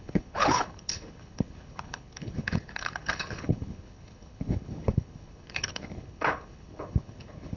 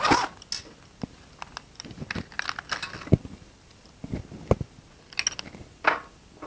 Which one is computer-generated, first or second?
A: first